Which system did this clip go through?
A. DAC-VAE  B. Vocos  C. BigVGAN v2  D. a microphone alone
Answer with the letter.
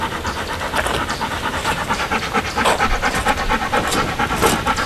C